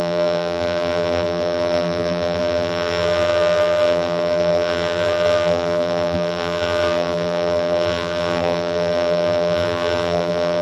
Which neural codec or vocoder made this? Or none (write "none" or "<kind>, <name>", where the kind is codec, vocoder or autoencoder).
vocoder, BigVGAN v2